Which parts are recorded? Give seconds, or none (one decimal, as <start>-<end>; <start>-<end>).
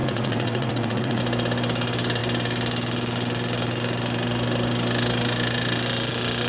1.2-6.5